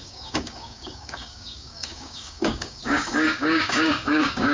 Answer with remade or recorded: remade